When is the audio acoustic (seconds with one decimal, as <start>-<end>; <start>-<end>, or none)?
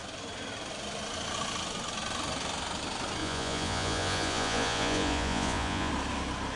0.0-3.2; 5.9-6.6